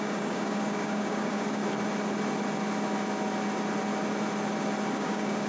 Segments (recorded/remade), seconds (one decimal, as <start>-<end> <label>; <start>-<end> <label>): 0.0-1.6 remade; 1.6-4.9 recorded; 4.9-5.5 remade